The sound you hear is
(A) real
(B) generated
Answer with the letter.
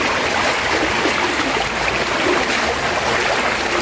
A